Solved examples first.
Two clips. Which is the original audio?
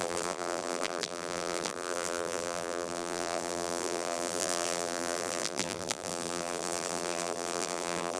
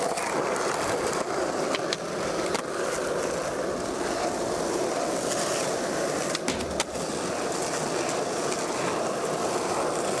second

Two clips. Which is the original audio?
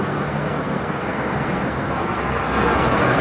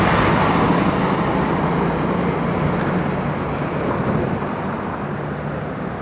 second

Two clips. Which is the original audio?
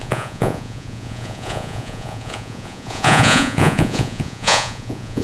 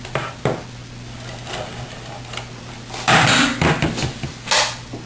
second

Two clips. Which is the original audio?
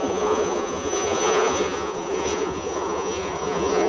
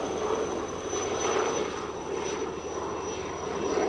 second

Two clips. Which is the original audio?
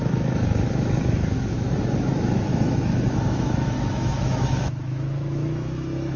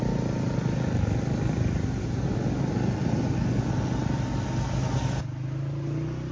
second